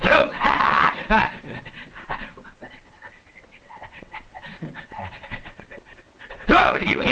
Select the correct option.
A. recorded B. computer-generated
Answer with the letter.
B